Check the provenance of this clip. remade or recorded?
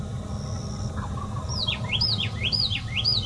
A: recorded